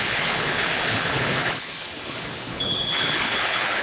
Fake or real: fake